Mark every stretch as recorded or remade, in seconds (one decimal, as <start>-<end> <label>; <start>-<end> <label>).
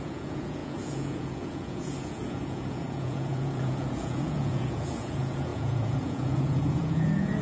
0.0-7.4 remade